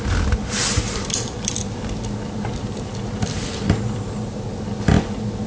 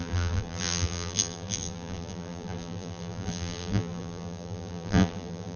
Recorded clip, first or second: first